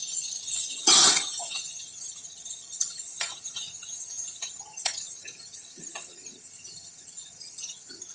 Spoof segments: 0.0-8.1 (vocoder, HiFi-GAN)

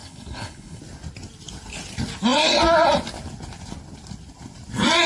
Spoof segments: 0.0-0.8 (codec, HILCodec)

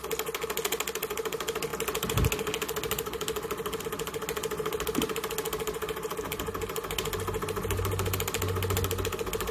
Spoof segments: none

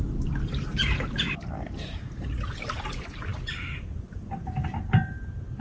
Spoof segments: none